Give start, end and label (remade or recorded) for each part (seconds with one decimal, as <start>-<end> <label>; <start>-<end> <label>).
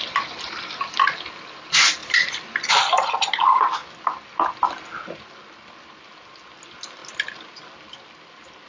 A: 0.0-2.0 recorded; 2.0-2.7 remade; 2.7-8.7 recorded